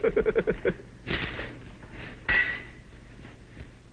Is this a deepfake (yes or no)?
yes